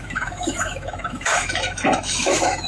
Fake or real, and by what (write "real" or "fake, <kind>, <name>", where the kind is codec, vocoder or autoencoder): fake, autoencoder, DAC-VAE